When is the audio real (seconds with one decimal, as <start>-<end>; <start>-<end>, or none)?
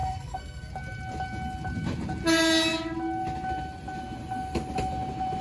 0.7-5.4